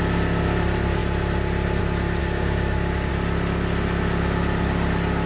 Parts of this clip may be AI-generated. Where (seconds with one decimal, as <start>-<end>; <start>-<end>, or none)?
2.2-3.1